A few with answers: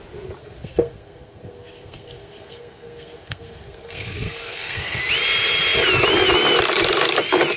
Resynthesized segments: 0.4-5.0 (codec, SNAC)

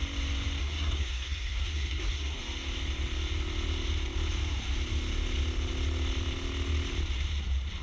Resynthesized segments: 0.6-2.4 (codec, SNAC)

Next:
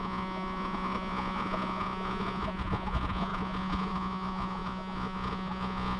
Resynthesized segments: 0.0-6.0 (vocoder, Vocos)